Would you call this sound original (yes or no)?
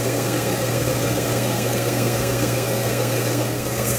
no